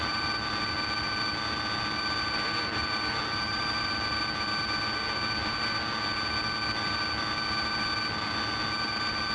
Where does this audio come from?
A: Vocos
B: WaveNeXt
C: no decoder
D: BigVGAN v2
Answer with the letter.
C